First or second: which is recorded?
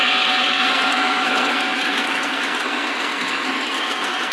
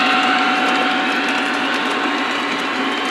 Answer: second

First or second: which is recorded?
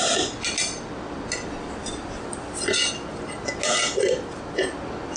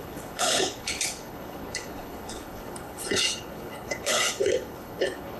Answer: first